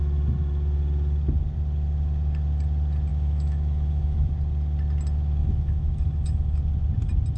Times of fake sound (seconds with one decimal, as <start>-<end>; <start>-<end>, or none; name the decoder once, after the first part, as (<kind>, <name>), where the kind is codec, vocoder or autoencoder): 3.1-4.3 (autoencoder, DAC-VAE); 5.4-6.6